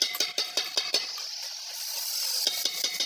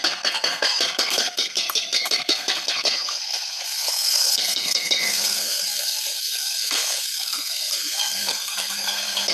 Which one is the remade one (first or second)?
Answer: second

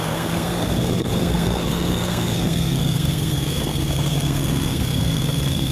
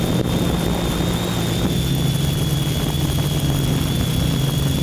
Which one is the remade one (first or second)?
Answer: first